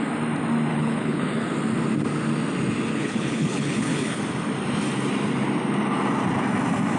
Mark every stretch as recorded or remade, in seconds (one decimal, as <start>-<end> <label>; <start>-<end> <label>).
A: 0.0-0.7 recorded; 0.7-1.5 remade; 1.5-2.9 recorded; 2.9-4.2 remade; 4.2-7.0 recorded